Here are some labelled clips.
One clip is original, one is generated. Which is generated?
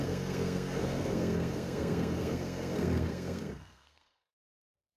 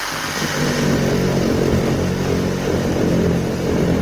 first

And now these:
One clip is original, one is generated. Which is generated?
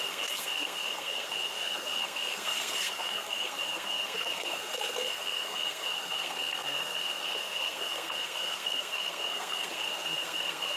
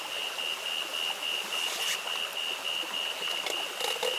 first